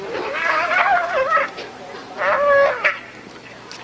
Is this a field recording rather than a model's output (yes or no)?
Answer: yes